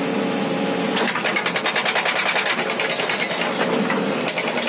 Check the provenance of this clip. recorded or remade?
recorded